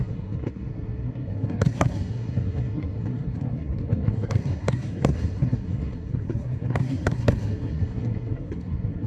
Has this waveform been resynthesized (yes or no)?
yes